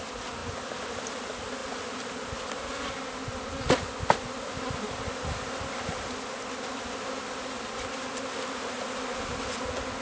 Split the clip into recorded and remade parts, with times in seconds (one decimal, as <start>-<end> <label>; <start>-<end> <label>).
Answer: 0.0-10.0 recorded